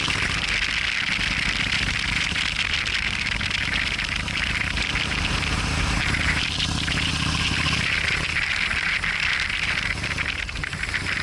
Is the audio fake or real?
real